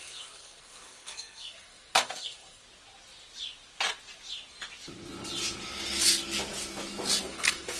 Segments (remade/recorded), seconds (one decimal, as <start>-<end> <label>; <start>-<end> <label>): 0.0-2.6 remade; 2.6-7.2 recorded; 7.2-7.8 remade